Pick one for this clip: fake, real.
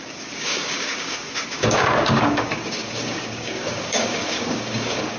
fake